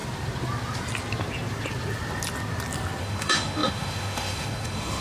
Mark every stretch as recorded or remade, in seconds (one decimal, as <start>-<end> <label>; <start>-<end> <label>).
0.0-3.0 recorded; 3.0-5.0 remade